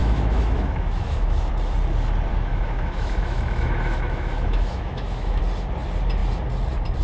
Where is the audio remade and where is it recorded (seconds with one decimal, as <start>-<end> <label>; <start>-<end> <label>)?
0.0-1.5 remade; 1.5-2.3 recorded; 2.3-5.4 remade; 5.4-7.0 recorded